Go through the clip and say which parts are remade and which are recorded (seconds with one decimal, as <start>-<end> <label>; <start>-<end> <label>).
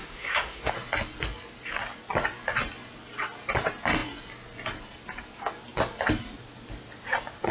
0.0-0.7 remade; 0.7-7.5 recorded